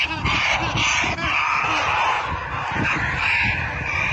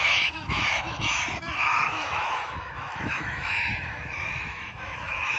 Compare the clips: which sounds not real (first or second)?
second